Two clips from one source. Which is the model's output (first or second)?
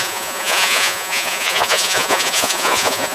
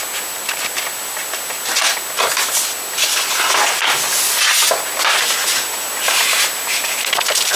first